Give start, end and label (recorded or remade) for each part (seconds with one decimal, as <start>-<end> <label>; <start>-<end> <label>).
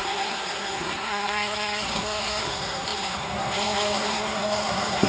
0.0-5.1 remade